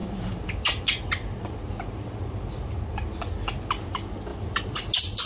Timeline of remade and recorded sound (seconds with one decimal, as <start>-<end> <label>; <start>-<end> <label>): 0.0-5.3 recorded